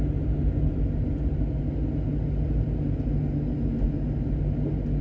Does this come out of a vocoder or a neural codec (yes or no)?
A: no